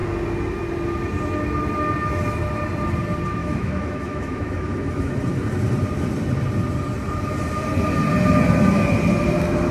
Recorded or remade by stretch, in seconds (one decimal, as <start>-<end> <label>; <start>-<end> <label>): 0.0-3.4 recorded; 3.4-5.1 remade; 5.1-9.7 recorded